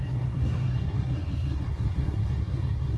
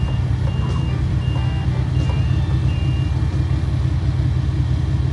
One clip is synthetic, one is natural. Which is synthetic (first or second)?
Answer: first